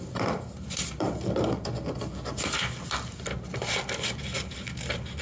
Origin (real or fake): real